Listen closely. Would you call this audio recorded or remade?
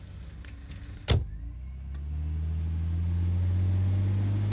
recorded